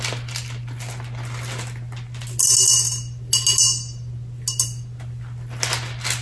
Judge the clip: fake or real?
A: real